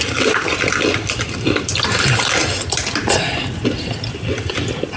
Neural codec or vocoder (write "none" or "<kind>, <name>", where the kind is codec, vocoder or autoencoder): none